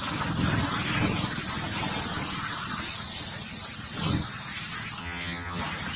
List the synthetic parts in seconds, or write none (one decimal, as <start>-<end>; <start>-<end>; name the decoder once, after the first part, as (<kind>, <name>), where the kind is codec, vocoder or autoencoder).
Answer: 5.0-5.6 (vocoder, HiFi-GAN)